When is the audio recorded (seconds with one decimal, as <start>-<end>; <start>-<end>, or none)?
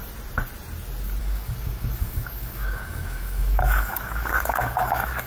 0.0-1.2